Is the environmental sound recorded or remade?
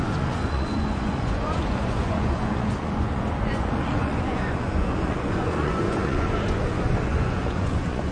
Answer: remade